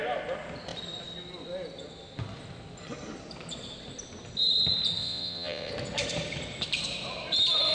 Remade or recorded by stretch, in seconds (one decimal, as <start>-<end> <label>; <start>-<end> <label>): 0.0-5.0 recorded; 5.0-5.7 remade; 5.7-7.7 recorded